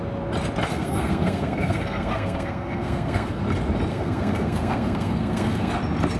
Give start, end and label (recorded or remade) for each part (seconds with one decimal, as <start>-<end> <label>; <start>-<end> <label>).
0.0-0.7 recorded; 0.7-3.4 remade; 3.4-3.9 recorded; 3.9-5.7 remade; 5.7-6.2 recorded